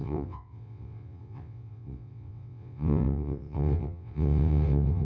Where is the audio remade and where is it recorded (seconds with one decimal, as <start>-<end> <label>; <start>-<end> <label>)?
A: 0.0-5.0 remade